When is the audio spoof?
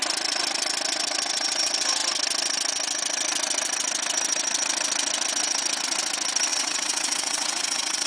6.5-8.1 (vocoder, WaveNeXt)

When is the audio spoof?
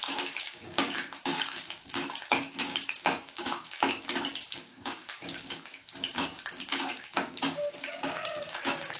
0.0-9.0 (codec, DAC)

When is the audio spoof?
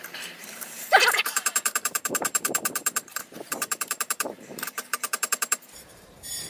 0.0-6.5 (vocoder, BigVGAN v2)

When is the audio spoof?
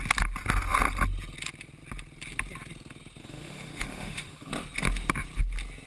3.2-4.5 (autoencoder, DAC-VAE)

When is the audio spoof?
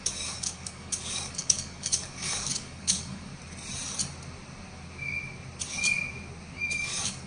0.0-3.3 (codec, DAC); 6.6-7.3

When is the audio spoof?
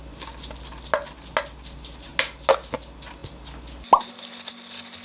none